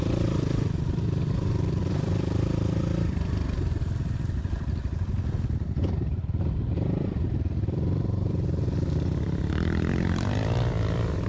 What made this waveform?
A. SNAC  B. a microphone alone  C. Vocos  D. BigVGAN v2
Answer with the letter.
D